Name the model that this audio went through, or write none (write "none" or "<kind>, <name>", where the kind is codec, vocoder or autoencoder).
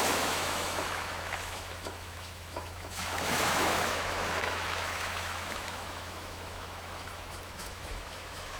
autoencoder, DAC-VAE